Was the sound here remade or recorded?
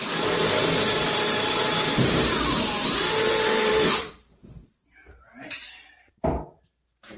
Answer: remade